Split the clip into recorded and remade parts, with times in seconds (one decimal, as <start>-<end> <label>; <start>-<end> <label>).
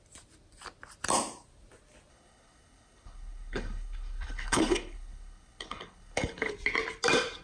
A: 0.0-2.1 recorded; 2.1-6.5 remade; 6.5-7.4 recorded